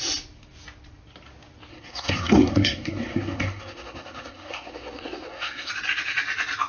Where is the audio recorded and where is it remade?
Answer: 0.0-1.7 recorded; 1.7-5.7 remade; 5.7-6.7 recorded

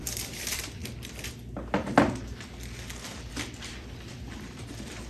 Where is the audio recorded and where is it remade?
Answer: 0.0-0.8 remade; 0.8-3.3 recorded; 3.3-5.1 remade

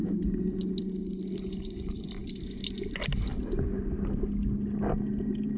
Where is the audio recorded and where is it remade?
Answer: 0.0-5.6 recorded

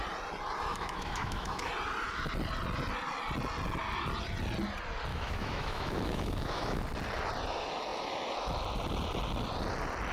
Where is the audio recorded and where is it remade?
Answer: 0.0-0.7 recorded; 0.7-1.7 remade; 1.7-5.1 recorded; 5.1-6.8 remade; 6.8-10.1 recorded

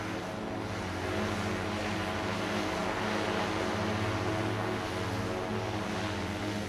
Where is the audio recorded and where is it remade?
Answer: 0.0-6.7 recorded

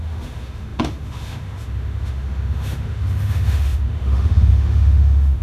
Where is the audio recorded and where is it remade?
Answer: 0.0-5.4 remade

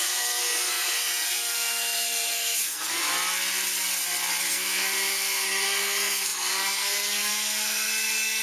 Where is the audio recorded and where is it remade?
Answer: 0.0-3.1 remade; 3.1-4.4 recorded; 4.4-8.4 remade

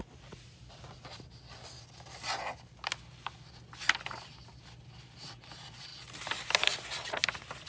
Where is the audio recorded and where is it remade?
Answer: 0.0-7.7 recorded